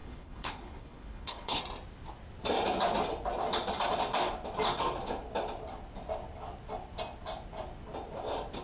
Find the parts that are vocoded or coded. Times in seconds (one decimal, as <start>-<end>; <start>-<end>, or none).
0.0-1.6